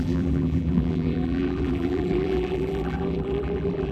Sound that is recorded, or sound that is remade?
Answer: remade